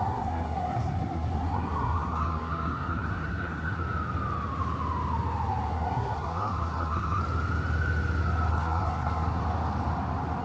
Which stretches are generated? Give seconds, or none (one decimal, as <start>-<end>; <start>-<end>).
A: 0.0-3.8; 5.7-7.2; 8.5-9.4